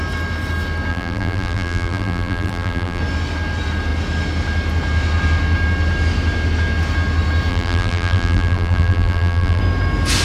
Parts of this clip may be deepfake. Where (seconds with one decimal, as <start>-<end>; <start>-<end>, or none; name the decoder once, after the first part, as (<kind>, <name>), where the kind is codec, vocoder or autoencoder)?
0.9-3.0 (vocoder, BigVGAN v2); 7.5-9.6